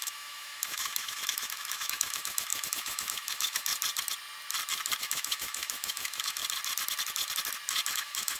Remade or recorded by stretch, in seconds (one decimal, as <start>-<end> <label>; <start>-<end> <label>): 0.0-3.7 remade; 3.7-5.0 recorded; 5.0-6.4 remade; 6.4-7.9 recorded; 7.9-8.4 remade